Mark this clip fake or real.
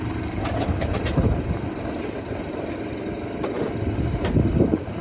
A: fake